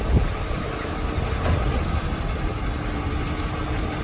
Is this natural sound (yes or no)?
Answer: yes